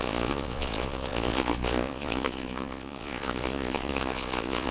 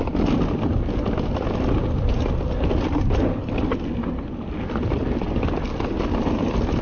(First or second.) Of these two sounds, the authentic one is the second